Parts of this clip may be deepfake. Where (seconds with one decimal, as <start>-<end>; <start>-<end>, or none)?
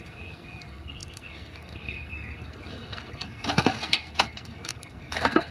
0.0-5.5